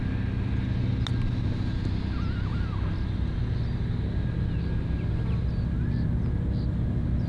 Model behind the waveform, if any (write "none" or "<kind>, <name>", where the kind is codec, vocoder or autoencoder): none